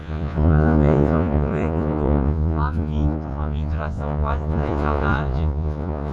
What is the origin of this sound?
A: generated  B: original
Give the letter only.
A